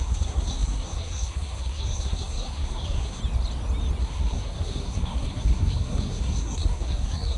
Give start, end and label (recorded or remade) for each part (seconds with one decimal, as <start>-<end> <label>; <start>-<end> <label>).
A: 0.0-3.2 remade; 3.2-4.0 recorded; 4.0-7.4 remade